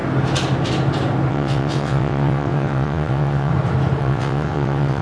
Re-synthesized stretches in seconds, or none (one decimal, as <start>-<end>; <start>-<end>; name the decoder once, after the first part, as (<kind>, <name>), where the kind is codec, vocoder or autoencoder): 1.3-3.5 (vocoder, WaveNeXt); 4.0-5.0